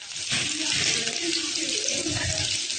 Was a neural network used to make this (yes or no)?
no